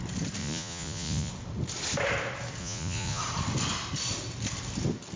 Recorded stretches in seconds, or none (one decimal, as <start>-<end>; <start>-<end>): 0.0-0.4; 1.3-2.6; 3.2-5.2